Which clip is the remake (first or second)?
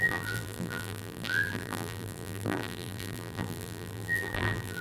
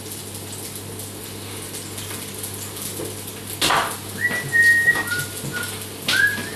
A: first